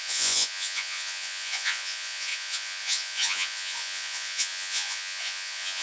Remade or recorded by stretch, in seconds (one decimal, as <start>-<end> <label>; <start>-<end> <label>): 0.0-5.8 remade